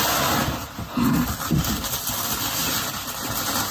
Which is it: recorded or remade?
recorded